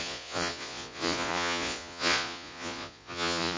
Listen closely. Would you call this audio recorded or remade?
remade